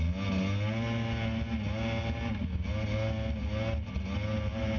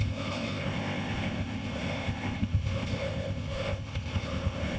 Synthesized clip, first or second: second